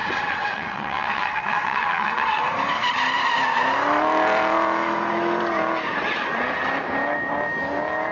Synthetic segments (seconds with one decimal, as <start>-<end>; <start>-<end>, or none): 0.0-2.4